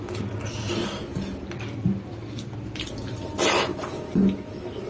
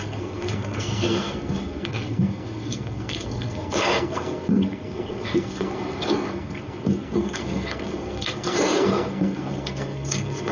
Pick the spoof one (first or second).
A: second